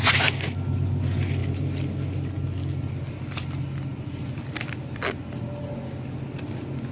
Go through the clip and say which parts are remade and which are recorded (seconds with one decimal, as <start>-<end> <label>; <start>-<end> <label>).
0.0-6.9 recorded